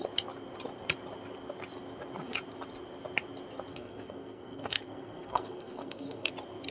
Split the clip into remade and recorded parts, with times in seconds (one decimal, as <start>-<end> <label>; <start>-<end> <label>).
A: 0.0-3.7 recorded; 3.7-6.3 remade; 6.3-6.7 recorded